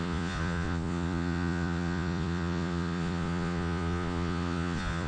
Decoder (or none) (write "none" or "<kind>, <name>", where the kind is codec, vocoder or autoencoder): vocoder, Vocos